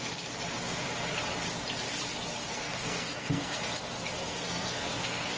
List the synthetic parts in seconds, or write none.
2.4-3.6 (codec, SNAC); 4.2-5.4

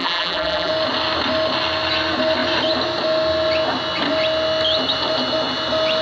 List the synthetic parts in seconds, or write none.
0.0-0.7 (vocoder, BigVGAN v2)

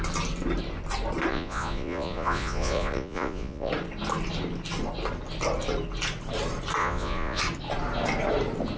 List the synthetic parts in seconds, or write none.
1.3-3.7 (vocoder, Vocos); 6.8-7.4

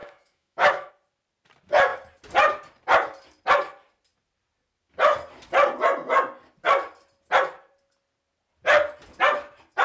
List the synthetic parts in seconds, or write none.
0.0-0.9 (autoencoder, DAC-VAE)

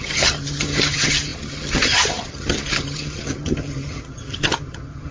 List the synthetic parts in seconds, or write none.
0.0-5.1 (vocoder, HiFi-GAN)

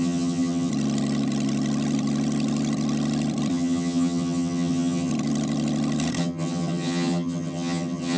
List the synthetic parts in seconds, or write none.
0.0-0.7 (vocoder, HiFi-GAN); 3.5-5.1; 6.2-8.2

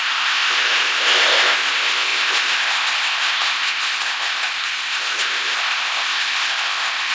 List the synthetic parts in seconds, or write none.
0.0-7.1 (codec, ZipCodec)

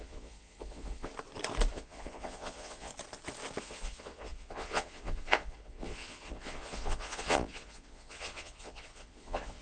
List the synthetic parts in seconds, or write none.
0.0-1.1 (vocoder, Vocos); 1.7-2.9; 3.6-9.6